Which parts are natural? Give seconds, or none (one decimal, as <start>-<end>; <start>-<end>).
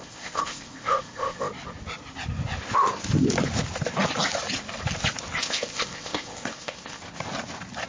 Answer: 1.5-5.4; 7.0-7.9